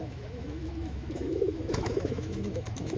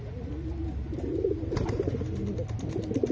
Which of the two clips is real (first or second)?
second